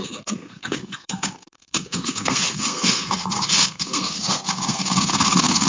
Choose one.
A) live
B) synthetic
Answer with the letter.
B